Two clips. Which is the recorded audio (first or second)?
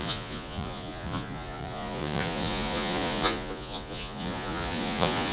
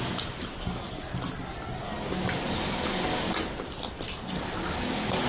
second